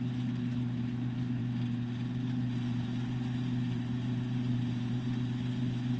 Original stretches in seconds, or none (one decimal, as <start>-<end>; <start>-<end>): 0.0-6.0

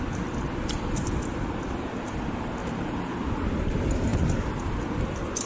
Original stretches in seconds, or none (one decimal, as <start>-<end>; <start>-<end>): 0.0-5.5

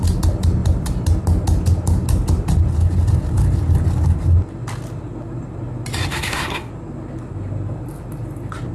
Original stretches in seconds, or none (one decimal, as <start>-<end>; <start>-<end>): 0.0-6.1; 6.7-8.7

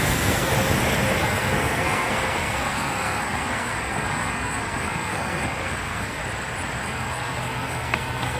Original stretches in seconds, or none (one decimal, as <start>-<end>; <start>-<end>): 0.5-1.2; 6.2-6.8

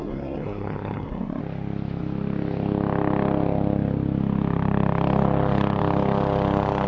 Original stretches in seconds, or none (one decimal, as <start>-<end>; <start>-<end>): 1.4-6.9